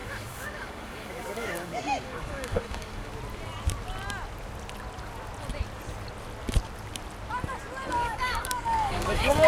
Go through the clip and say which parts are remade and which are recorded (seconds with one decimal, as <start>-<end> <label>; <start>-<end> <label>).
0.0-3.1 remade; 3.1-7.9 recorded; 7.9-9.5 remade